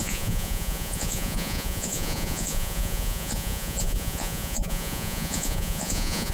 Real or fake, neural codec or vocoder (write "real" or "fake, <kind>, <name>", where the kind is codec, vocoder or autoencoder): fake, vocoder, Vocos